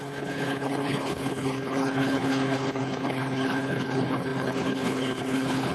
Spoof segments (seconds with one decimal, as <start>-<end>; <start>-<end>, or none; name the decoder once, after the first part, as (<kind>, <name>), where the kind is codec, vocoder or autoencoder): 0.0-5.7 (codec, HILCodec)